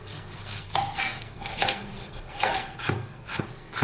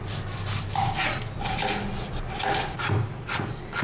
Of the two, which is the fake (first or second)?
first